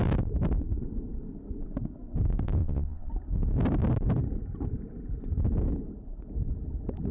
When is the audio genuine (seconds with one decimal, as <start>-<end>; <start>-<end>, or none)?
0.0-2.6; 3.1-7.1